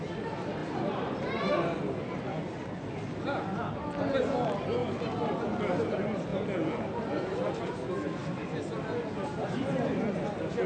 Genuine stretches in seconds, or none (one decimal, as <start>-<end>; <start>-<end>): 0.0-4.8; 5.4-10.7